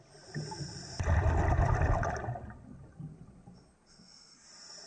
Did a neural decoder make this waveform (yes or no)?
no